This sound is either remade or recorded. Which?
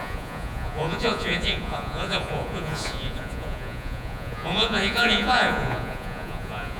remade